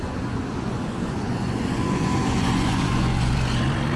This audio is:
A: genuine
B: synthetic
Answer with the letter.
B